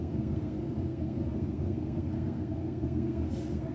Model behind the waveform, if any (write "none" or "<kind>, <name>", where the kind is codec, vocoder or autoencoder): codec, SNAC